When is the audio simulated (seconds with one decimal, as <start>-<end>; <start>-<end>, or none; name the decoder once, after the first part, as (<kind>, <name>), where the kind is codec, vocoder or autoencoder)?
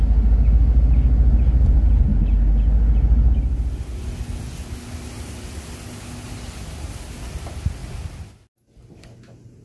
none